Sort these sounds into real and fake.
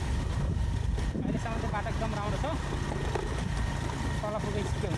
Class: real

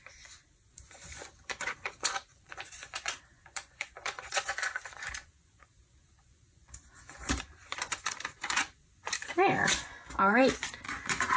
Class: fake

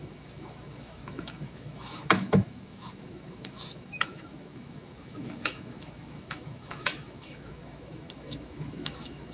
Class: fake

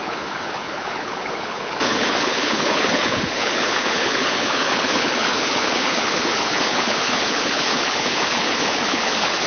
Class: fake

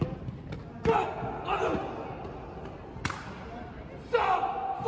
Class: real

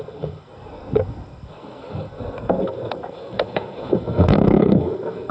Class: fake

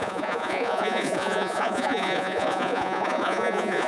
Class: fake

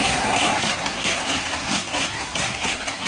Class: fake